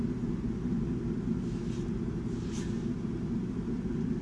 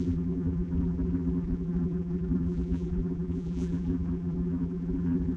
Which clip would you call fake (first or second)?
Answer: second